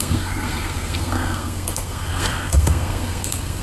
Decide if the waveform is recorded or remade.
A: remade